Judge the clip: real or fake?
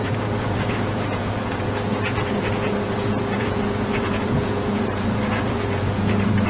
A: fake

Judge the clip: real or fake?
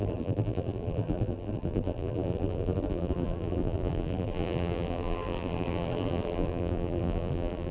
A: fake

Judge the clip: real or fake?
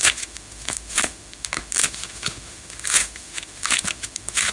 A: fake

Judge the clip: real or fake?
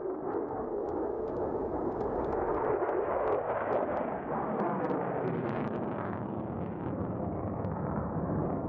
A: fake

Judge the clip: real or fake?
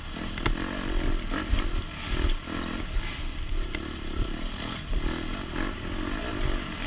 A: real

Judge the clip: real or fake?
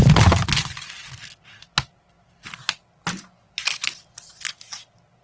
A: real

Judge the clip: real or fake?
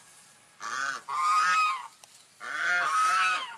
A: real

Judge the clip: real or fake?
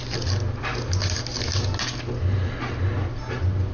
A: real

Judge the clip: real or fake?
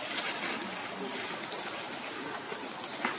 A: real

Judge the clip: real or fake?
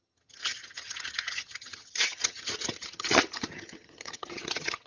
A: fake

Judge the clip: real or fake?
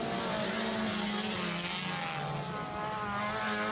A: real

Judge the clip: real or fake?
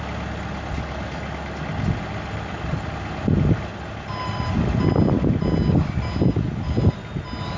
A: real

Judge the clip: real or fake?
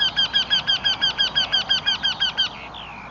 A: real